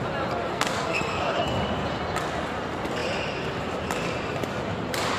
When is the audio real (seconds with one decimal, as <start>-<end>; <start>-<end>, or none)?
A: 0.0-0.5; 1.6-5.2